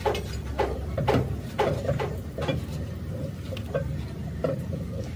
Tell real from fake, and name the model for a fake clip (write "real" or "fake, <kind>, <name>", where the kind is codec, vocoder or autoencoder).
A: fake, vocoder, BigVGAN v2